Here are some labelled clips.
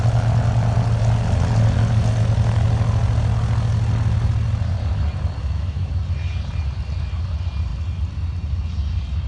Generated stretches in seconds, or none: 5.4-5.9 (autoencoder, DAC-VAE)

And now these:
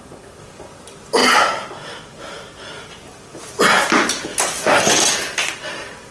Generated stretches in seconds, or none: none

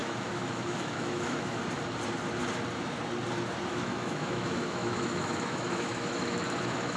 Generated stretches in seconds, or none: 0.0-1.6 (autoencoder, DAC-VAE); 3.7-7.0

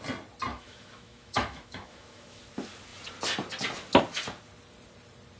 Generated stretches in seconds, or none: 0.5-2.4 (autoencoder, DAC-VAE)

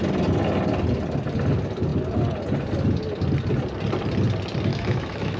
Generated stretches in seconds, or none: 4.7-5.4 (autoencoder, DAC-VAE)

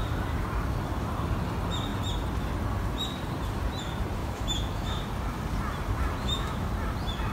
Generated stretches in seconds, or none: 4.2-5.0 (autoencoder, DAC-VAE); 6.2-6.7

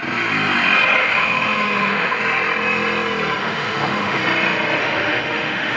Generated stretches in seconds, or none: 1.0-2.2 (autoencoder, DAC-VAE); 3.4-4.2; 4.8-5.8